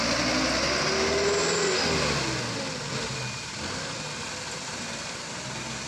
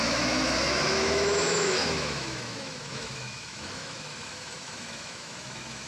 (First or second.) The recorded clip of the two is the first